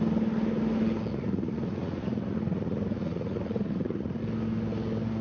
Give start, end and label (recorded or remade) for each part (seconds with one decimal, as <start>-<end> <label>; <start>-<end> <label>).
0.0-1.1 recorded; 1.1-4.2 remade; 4.2-5.2 recorded